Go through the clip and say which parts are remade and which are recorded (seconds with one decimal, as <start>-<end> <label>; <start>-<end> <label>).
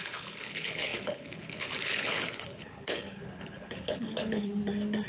0.0-4.6 remade; 4.6-5.1 recorded